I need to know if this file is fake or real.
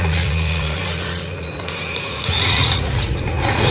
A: fake